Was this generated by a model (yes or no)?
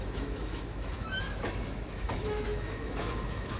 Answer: yes